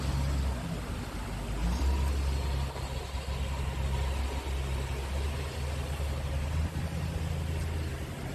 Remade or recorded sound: recorded